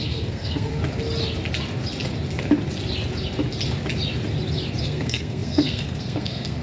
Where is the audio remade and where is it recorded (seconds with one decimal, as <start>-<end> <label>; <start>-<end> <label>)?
0.0-0.8 remade; 0.8-4.8 recorded; 4.8-6.6 remade